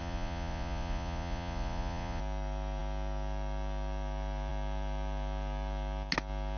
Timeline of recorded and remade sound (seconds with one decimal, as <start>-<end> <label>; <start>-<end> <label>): 0.0-2.2 remade; 2.2-6.6 recorded